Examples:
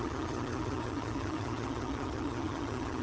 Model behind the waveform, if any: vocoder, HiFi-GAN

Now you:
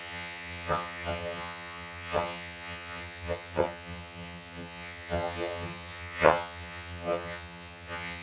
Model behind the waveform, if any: vocoder, HiFi-GAN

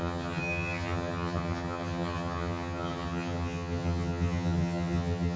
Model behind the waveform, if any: vocoder, HiFi-GAN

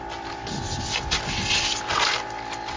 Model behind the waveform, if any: none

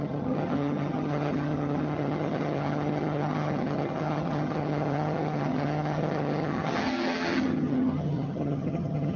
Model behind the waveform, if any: vocoder, HiFi-GAN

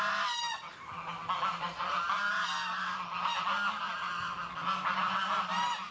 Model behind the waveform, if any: none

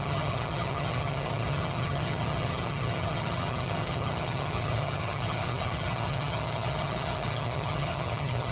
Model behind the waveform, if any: vocoder, HiFi-GAN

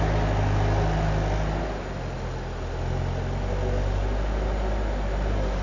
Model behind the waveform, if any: none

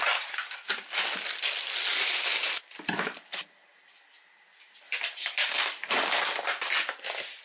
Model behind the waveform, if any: none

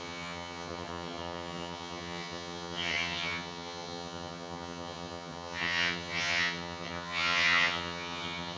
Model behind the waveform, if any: vocoder, HiFi-GAN